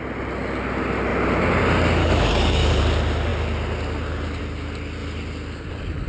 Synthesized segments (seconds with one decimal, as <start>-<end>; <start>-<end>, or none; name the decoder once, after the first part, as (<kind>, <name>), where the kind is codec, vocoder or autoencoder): 2.0-2.8 (codec, DAC)

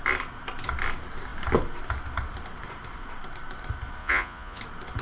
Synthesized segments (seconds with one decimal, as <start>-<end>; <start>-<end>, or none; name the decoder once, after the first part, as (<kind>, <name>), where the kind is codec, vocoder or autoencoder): 4.0-4.6 (vocoder, Vocos)

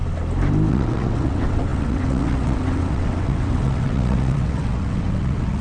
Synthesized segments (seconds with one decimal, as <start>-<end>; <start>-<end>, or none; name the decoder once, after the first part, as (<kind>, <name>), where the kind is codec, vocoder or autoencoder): 0.7-5.6 (vocoder, WaveNeXt)

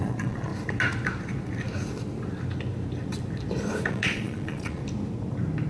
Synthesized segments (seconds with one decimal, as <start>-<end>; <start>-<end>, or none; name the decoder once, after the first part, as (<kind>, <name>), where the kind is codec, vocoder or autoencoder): 0.0-0.5 (vocoder, Vocos); 3.9-4.8

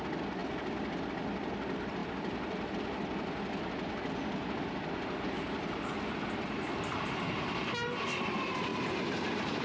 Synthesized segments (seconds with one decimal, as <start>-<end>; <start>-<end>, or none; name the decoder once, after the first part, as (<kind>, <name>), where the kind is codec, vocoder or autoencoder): 2.0-2.7 (vocoder, BigVGAN v2)

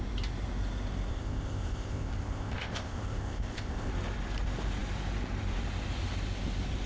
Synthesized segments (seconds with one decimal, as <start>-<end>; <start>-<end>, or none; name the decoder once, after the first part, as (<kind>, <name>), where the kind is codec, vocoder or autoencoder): 1.1-3.9 (codec, ZipCodec)

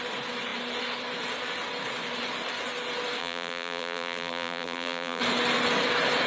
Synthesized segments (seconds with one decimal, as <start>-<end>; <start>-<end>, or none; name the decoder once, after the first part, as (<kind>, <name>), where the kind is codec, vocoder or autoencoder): 3.2-5.2 (vocoder, BigVGAN v2)

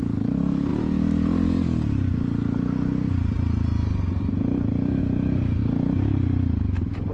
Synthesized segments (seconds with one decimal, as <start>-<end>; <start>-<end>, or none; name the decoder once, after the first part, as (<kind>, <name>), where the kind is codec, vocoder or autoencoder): none